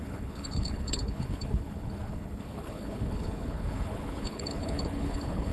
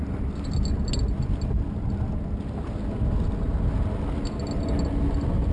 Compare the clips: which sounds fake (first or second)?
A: first